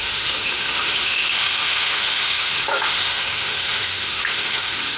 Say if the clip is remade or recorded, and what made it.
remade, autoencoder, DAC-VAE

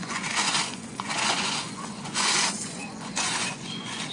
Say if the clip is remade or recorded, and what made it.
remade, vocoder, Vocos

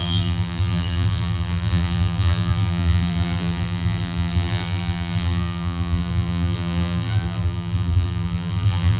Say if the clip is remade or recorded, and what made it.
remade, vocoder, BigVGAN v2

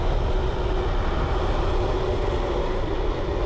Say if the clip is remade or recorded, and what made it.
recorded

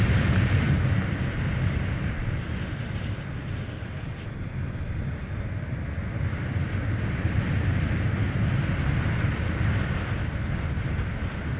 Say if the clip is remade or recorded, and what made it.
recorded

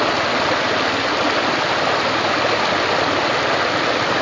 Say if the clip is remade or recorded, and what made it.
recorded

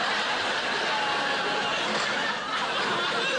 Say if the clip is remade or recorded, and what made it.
recorded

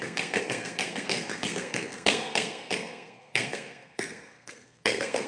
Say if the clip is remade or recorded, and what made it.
remade, codec, SNAC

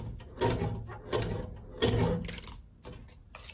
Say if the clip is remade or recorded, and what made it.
recorded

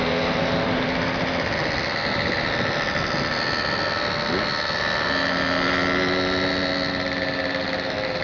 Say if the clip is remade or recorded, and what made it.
recorded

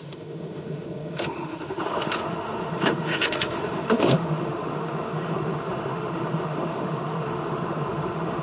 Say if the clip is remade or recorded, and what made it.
remade, autoencoder, DAC-VAE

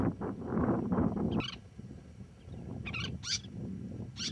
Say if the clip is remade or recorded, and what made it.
recorded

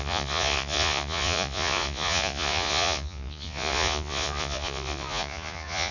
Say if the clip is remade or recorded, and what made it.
remade, vocoder, Vocos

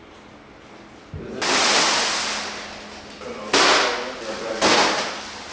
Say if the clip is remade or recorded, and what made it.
recorded